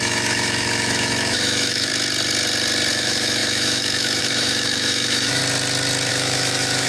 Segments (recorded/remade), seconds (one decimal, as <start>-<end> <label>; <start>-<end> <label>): 0.0-1.9 remade; 1.9-2.9 recorded; 2.9-5.4 remade; 5.4-6.1 recorded; 6.1-6.9 remade